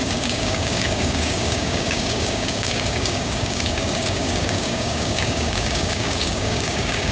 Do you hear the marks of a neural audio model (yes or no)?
yes